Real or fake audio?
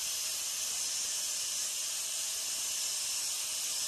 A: real